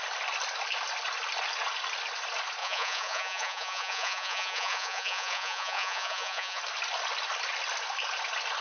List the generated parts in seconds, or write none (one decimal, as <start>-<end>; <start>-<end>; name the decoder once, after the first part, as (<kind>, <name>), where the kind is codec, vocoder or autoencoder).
2.6-6.6 (vocoder, Vocos)